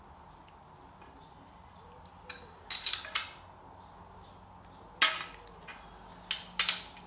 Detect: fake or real real